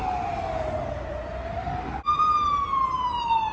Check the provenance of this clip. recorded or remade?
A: recorded